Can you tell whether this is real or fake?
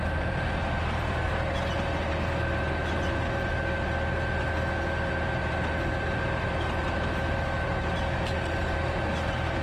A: real